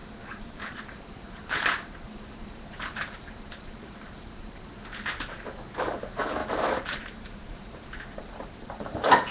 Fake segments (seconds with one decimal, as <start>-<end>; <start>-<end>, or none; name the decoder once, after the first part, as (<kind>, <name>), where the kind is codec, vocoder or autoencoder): 0.0-4.6 (vocoder, BigVGAN v2); 6.4-9.3